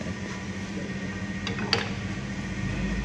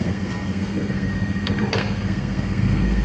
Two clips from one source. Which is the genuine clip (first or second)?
first